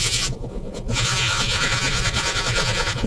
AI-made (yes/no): yes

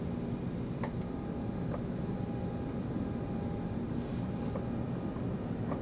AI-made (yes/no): no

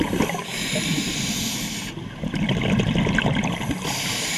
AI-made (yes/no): no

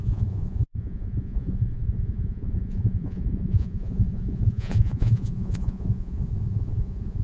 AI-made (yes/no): yes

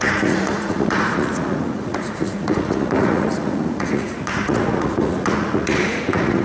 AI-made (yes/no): yes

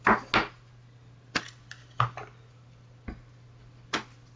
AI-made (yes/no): no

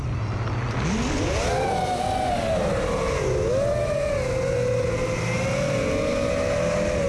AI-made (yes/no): no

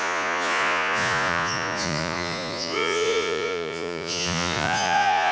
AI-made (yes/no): yes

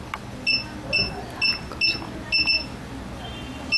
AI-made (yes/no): no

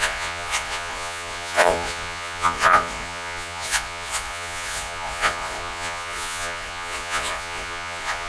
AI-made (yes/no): yes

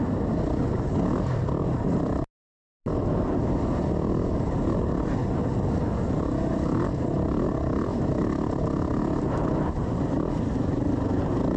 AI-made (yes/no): no